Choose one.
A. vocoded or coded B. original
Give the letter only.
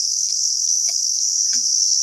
A